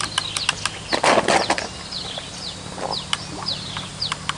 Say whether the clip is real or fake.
real